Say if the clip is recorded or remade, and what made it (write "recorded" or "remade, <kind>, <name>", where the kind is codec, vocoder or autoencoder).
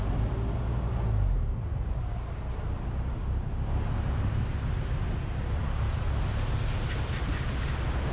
recorded